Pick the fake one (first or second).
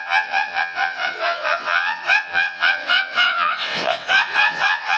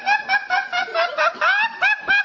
first